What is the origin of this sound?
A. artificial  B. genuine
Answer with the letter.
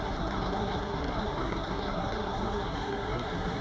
A